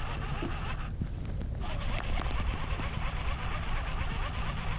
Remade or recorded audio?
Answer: recorded